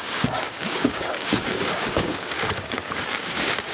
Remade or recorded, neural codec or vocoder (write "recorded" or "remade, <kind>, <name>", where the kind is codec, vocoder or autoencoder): remade, codec, DAC